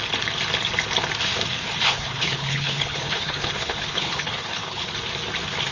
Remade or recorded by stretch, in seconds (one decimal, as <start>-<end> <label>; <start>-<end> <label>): 0.0-1.5 recorded; 1.5-4.9 remade; 4.9-5.7 recorded

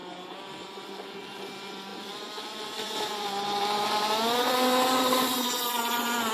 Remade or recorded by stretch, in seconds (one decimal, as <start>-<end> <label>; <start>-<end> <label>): 0.0-0.9 remade; 0.9-1.9 recorded; 1.9-5.7 remade; 5.7-6.3 recorded

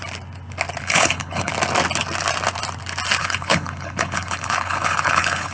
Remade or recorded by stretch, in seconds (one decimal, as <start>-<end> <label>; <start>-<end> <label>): 0.0-0.8 recorded; 0.8-1.5 remade; 1.5-3.2 recorded; 3.2-5.5 remade

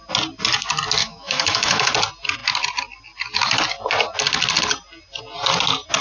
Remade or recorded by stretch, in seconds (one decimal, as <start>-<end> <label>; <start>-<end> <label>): 0.0-1.0 recorded; 1.0-1.9 remade; 1.9-6.0 recorded

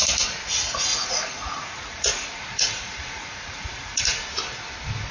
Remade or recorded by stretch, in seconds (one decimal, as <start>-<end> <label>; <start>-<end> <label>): 0.0-0.9 recorded; 0.9-4.0 remade; 4.0-5.1 recorded

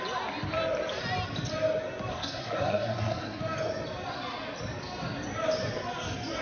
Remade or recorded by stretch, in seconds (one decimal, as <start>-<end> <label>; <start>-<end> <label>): 0.0-2.1 recorded; 2.1-3.4 remade; 3.4-6.4 recorded

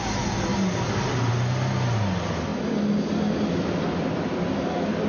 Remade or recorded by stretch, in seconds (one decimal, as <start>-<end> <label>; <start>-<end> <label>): 0.0-5.1 recorded